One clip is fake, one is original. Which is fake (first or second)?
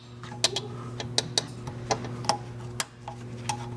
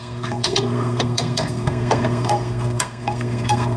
second